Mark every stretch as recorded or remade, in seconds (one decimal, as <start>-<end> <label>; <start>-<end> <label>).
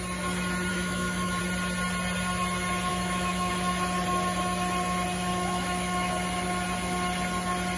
0.0-0.7 recorded; 0.7-1.4 remade; 1.4-2.9 recorded; 2.9-3.5 remade; 3.5-5.3 recorded; 5.3-6.1 remade; 6.1-7.8 recorded